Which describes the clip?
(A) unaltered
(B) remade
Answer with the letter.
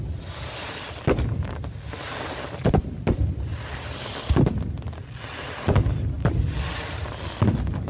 A